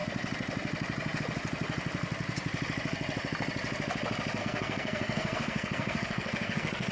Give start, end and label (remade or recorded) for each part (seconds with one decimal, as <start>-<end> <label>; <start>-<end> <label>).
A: 0.0-4.4 recorded; 4.4-6.9 remade